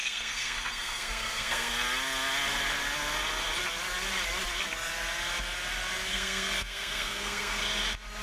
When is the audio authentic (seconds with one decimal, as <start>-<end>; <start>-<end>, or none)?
1.7-6.1; 7.6-8.2

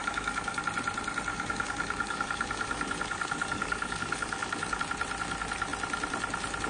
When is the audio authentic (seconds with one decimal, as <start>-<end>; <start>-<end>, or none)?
0.6-1.3; 4.8-6.7